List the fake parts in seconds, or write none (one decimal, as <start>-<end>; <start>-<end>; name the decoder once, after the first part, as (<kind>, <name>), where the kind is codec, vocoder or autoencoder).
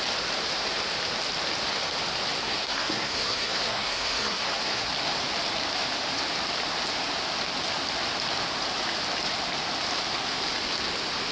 2.4-4.9 (codec, SNAC)